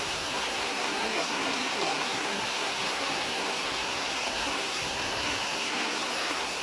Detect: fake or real fake